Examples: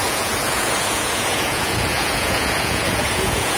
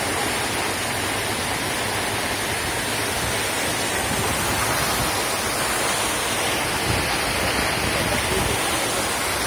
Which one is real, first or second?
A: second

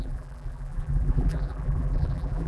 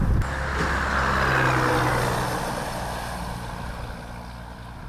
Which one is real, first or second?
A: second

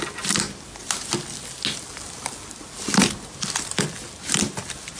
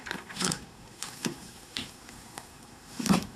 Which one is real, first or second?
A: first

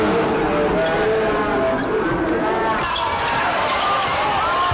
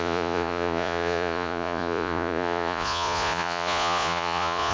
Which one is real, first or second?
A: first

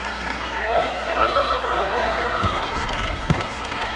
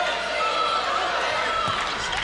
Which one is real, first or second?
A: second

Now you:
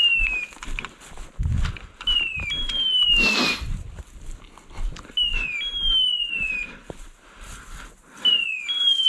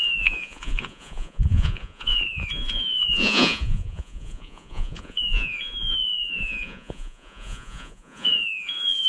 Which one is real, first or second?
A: first